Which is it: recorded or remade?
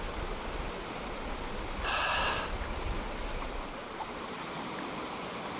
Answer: recorded